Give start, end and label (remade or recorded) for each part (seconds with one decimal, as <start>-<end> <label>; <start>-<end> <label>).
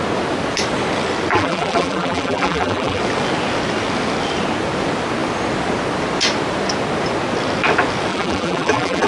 0.0-1.3 recorded; 1.3-3.0 remade; 3.0-8.1 recorded; 8.1-9.1 remade